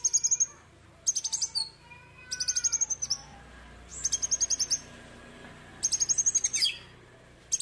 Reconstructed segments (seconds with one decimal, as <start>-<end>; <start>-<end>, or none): none